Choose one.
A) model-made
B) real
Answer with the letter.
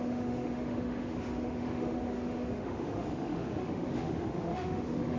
A